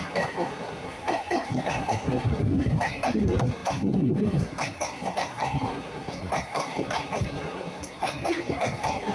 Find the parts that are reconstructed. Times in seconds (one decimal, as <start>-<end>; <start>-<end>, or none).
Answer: 0.0-9.1